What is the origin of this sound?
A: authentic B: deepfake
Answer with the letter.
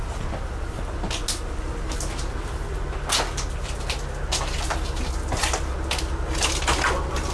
A